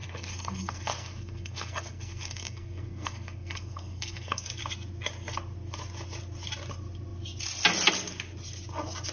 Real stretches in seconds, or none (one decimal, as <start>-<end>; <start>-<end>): 4.6-9.1